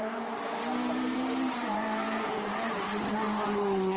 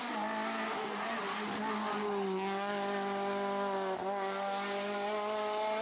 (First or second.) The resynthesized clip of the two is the first